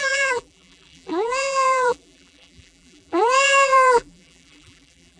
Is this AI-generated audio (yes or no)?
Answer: yes